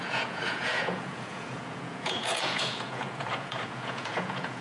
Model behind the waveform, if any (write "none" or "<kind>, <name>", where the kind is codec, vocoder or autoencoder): vocoder, Vocos